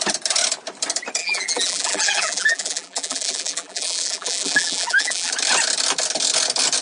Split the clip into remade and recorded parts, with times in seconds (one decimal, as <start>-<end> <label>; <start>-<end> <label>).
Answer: 0.0-1.2 recorded; 1.2-5.3 remade; 5.3-6.8 recorded